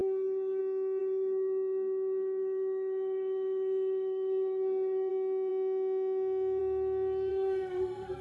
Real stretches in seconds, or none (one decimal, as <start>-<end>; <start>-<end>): 0.6-1.0; 5.1-7.3